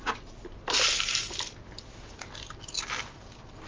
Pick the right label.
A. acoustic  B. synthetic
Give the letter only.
A